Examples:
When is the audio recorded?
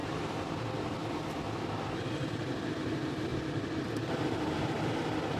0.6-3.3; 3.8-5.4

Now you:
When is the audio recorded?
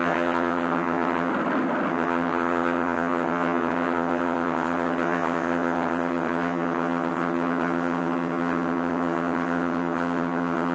1.3-1.9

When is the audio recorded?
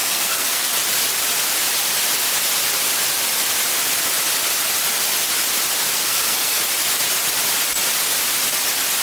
0.7-5.8; 6.6-9.0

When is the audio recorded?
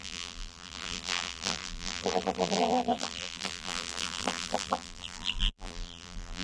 none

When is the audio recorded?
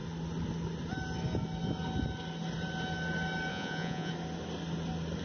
0.0-3.5; 4.1-5.2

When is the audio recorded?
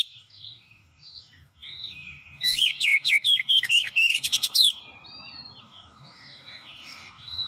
4.8-5.6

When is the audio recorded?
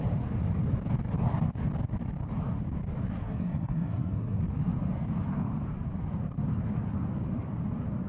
0.0-3.2; 4.4-8.1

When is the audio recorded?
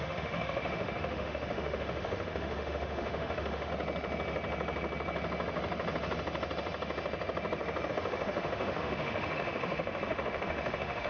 3.7-7.9